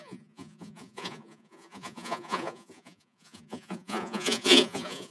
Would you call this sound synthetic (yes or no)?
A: yes